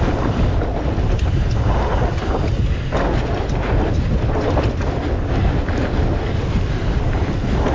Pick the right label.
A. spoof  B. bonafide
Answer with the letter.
B